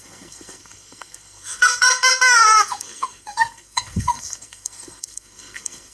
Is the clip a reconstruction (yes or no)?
yes